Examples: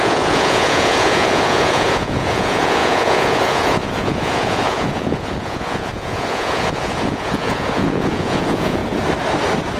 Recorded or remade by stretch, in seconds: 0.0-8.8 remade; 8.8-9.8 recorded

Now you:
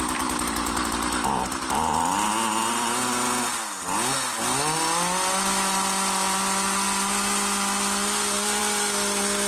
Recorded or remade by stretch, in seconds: 0.0-9.5 recorded

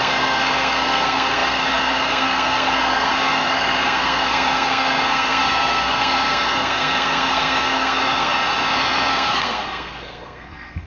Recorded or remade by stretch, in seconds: 0.0-8.4 remade; 8.4-9.1 recorded; 9.1-10.9 remade

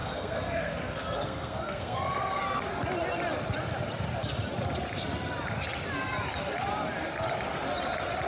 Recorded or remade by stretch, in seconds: 0.0-2.4 remade; 2.4-8.3 recorded

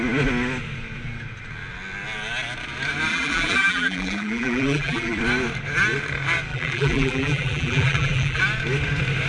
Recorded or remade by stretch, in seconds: 0.0-3.1 recorded; 3.1-5.2 remade; 5.2-6.5 recorded; 6.5-8.4 remade; 8.4-9.3 recorded

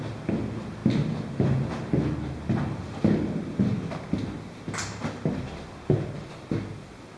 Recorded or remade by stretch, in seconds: 0.0-7.2 recorded